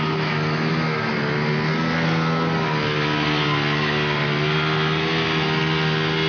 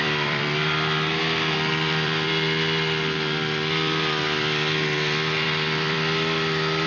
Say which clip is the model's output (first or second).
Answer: second